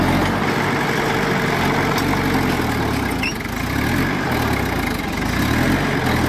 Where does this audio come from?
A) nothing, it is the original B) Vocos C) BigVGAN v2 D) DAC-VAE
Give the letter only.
A